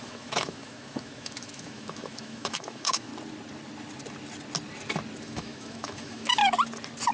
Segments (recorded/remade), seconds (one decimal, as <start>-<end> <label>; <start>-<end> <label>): 0.0-3.1 remade; 3.1-5.2 recorded; 5.2-6.4 remade; 6.4-7.1 recorded